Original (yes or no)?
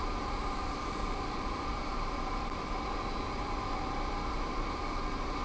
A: no